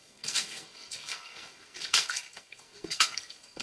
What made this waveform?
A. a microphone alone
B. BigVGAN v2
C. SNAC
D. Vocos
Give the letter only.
C